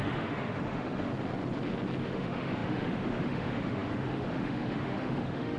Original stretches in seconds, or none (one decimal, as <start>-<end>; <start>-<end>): 1.1-2.0